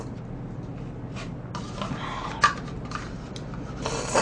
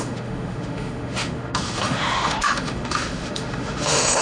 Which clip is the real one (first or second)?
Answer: first